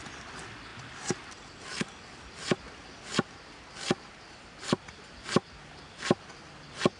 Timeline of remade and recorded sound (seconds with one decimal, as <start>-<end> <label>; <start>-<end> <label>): 0.0-7.0 recorded